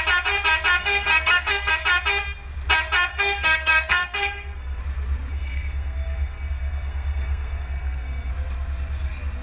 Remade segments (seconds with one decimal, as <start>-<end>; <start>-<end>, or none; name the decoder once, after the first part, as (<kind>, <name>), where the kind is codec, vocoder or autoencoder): 0.8-1.7 (codec, SNAC); 3.1-4.8; 5.3-8.3